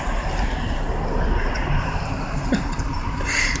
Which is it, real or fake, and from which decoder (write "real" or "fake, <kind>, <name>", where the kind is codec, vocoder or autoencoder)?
real